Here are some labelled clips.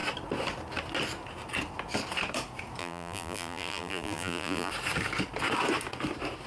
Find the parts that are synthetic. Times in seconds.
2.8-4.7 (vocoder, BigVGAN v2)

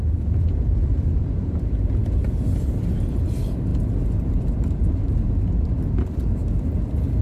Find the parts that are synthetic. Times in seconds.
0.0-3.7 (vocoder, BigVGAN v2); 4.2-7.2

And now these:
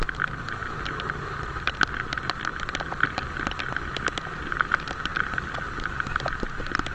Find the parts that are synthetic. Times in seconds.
2.5-3.3 (vocoder, BigVGAN v2); 5.1-5.6

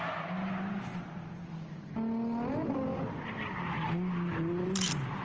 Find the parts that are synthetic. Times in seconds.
none

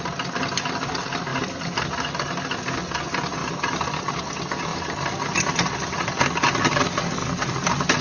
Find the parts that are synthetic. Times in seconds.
1.3-1.8 (vocoder, BigVGAN v2); 3.4-4.1; 4.7-6.2; 7.2-8.0

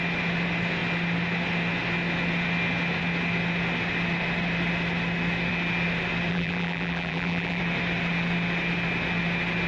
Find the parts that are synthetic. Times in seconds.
6.3-7.6 (vocoder, BigVGAN v2)

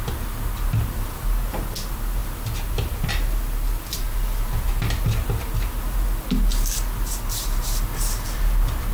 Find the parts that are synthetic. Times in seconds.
none